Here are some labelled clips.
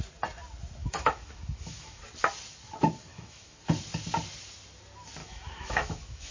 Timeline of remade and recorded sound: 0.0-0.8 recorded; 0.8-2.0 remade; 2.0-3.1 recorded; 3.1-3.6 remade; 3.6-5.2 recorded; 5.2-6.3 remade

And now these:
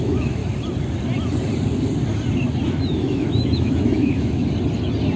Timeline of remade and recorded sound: 0.0-0.4 remade; 0.4-2.7 recorded; 2.7-4.4 remade; 4.4-5.2 recorded

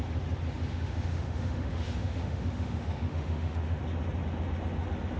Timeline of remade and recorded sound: 0.0-0.7 recorded; 0.7-3.8 remade; 3.8-5.2 recorded

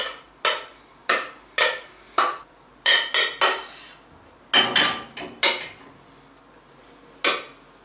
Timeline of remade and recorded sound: 0.0-7.8 recorded

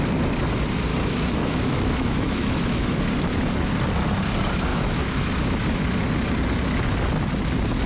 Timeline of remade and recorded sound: 0.0-0.9 recorded; 0.9-3.0 remade; 3.0-4.7 recorded; 4.7-5.3 remade; 5.3-7.9 recorded

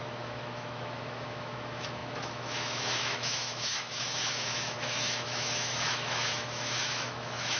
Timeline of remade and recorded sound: 0.0-7.6 remade

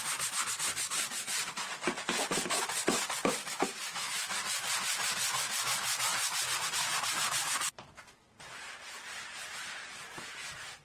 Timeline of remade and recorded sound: 0.0-3.4 recorded; 3.4-4.4 remade; 4.4-10.8 recorded

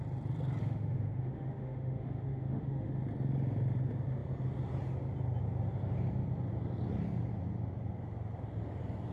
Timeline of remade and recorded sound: 0.0-0.6 recorded; 0.6-3.0 remade; 3.0-9.1 recorded